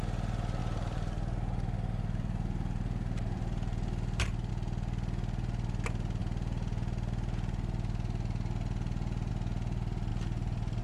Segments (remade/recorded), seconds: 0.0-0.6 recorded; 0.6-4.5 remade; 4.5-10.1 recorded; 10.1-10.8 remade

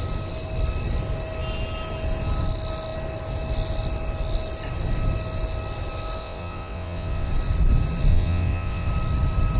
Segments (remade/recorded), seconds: 0.0-6.2 recorded; 6.2-7.3 remade; 7.3-8.1 recorded; 8.1-8.9 remade; 8.9-9.6 recorded

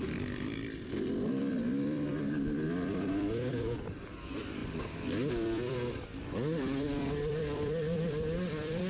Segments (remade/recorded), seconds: 0.0-4.6 remade; 4.6-5.3 recorded; 5.3-8.9 remade

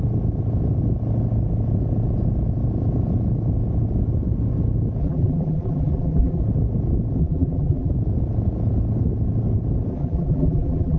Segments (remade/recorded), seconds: 0.0-5.0 recorded; 5.0-6.4 remade; 6.4-7.2 recorded; 7.2-7.9 remade; 7.9-9.9 recorded; 9.9-11.0 remade

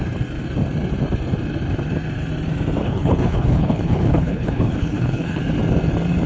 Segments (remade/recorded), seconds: 0.0-2.8 recorded; 2.8-5.4 remade; 5.4-6.3 recorded